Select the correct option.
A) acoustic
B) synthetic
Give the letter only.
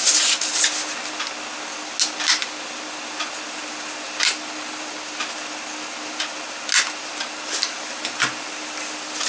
A